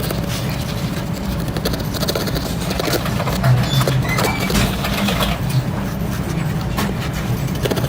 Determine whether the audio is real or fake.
real